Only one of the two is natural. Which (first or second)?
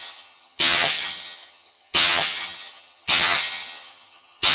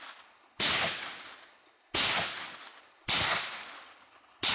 second